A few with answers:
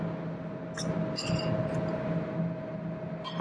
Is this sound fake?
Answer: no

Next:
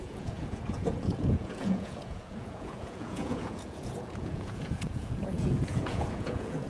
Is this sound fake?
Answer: yes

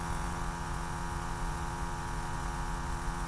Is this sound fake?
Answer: yes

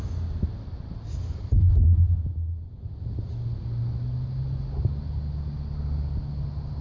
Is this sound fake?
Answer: no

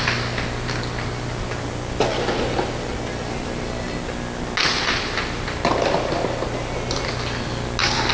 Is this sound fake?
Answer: no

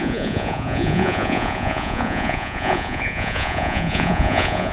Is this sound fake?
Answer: yes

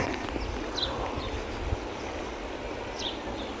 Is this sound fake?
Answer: no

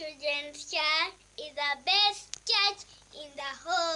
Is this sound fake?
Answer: no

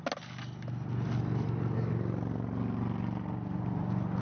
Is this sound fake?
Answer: no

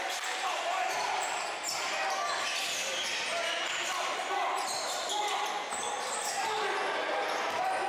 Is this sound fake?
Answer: no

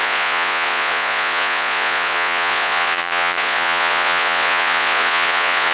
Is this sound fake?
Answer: yes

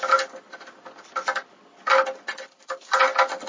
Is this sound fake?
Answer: no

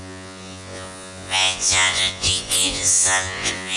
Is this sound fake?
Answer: yes